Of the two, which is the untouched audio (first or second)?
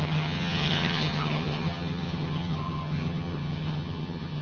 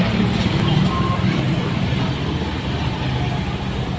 second